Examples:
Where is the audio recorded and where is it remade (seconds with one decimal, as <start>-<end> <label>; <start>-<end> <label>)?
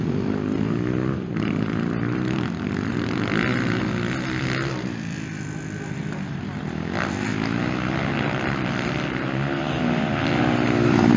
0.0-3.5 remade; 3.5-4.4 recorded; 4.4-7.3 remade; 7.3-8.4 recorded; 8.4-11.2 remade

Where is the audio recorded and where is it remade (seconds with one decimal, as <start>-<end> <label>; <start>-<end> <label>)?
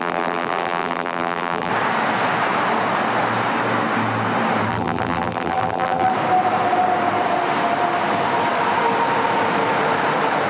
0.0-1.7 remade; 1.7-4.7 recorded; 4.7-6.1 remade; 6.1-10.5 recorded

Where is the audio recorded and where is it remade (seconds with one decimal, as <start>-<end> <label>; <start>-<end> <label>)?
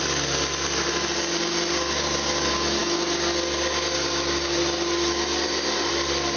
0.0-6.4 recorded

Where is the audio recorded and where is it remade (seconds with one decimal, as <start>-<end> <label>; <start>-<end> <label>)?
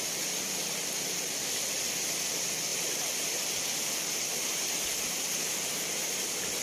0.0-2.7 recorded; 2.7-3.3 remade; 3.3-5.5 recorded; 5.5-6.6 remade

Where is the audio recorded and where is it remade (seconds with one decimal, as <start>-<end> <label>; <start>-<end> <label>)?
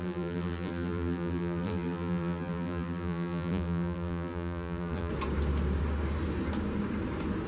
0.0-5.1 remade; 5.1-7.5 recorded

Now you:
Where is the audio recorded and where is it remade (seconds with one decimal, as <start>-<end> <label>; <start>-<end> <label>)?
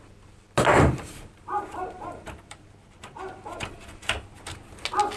0.0-0.7 recorded; 0.7-3.8 remade; 3.8-5.2 recorded